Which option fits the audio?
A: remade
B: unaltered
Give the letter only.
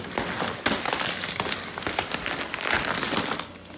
B